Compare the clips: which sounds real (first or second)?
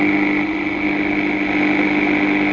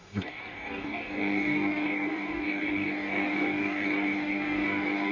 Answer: first